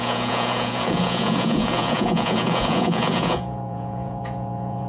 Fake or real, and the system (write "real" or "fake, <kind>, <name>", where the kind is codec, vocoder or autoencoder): fake, vocoder, Vocos